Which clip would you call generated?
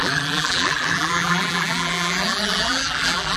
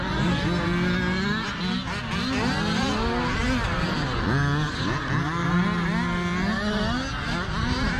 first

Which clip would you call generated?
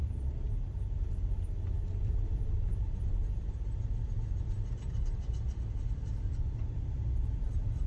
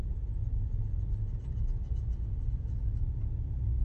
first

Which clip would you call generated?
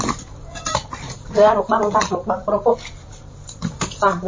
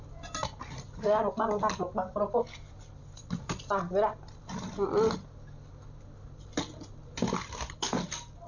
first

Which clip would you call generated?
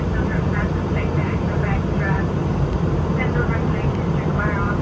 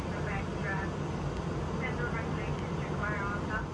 first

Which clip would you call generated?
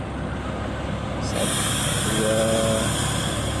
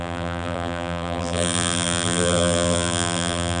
second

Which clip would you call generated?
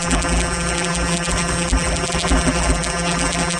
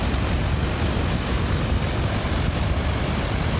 first